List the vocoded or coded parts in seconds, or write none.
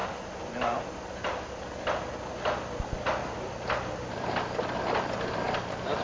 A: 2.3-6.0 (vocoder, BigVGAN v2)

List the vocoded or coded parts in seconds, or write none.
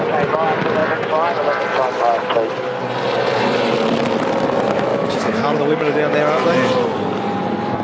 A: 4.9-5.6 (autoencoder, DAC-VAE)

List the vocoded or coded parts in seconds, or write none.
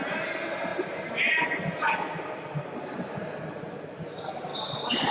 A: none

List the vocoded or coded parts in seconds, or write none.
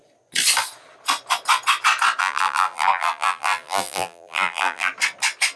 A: 2.2-4.9 (vocoder, BigVGAN v2)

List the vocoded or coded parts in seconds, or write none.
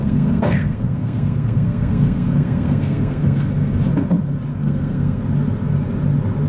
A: 0.0-3.9 (codec, SNAC); 4.5-5.2